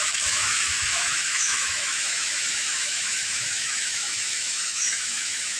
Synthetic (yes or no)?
yes